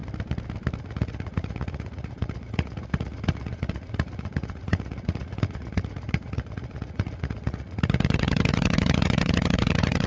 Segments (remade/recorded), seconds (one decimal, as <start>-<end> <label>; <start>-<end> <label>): 0.0-0.8 recorded; 0.8-10.1 remade